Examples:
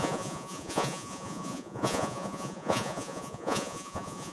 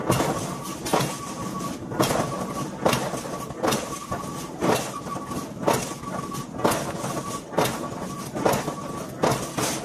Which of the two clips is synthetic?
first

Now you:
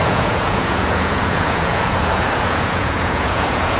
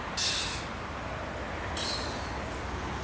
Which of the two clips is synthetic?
first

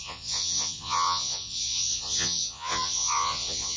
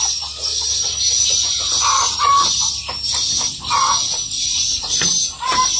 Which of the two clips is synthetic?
first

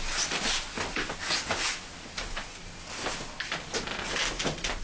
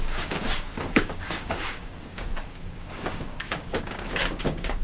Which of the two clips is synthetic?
second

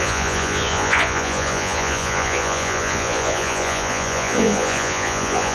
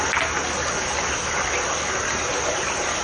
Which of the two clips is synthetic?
first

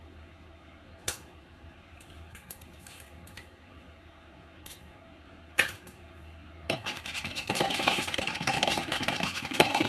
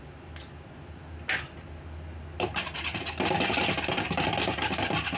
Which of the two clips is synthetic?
first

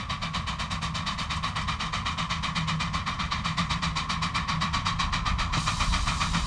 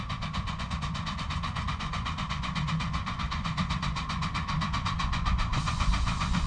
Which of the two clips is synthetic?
second